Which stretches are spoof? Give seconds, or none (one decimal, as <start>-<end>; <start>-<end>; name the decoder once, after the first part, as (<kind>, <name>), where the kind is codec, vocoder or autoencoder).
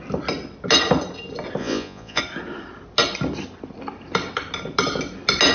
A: 1.6-2.2 (vocoder, Vocos)